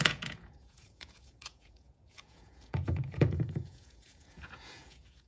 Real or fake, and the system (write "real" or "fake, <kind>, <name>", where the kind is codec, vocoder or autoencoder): fake, vocoder, Vocos